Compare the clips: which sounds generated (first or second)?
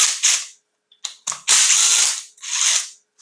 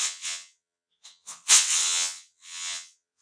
second